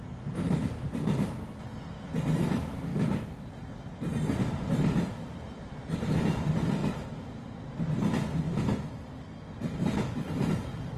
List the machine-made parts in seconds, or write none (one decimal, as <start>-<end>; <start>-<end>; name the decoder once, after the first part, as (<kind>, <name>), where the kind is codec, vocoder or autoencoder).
0.0-4.1 (vocoder, BigVGAN v2); 6.2-6.8; 10.5-11.0